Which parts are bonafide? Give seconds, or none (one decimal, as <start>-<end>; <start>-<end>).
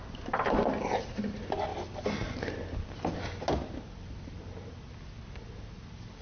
0.0-6.2